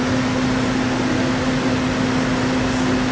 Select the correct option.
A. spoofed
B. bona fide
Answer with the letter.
B